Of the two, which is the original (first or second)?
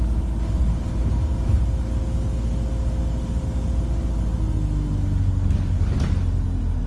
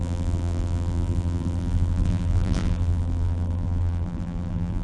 first